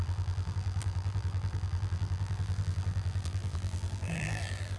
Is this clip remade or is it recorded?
remade